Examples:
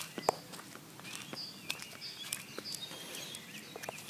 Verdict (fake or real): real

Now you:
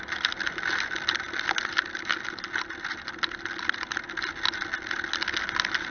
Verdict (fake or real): real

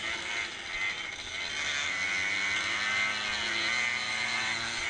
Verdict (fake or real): real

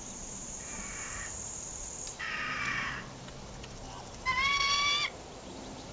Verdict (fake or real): fake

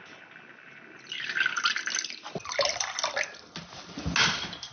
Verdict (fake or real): real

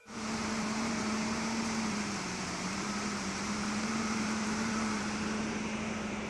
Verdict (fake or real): fake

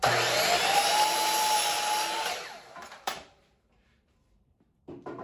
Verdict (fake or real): fake